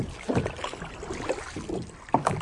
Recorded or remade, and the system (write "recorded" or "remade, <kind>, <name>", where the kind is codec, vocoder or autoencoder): recorded